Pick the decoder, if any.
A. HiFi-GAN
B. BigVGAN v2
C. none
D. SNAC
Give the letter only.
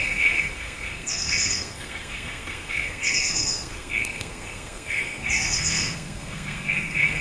D